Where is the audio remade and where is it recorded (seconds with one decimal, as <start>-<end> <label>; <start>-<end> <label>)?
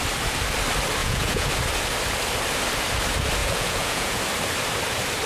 0.0-1.0 recorded; 1.0-1.5 remade; 1.5-3.4 recorded; 3.4-4.2 remade; 4.2-5.3 recorded